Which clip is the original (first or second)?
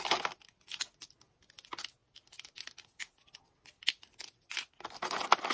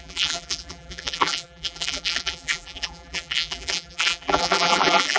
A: first